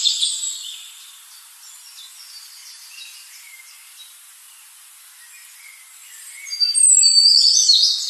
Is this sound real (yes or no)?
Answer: yes